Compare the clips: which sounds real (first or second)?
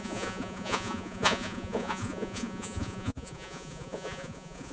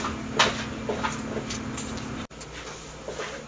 second